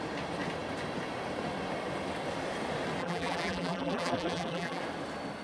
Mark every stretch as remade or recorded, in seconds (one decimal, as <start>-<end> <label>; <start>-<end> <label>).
0.0-3.0 recorded; 3.0-4.8 remade; 4.8-5.4 recorded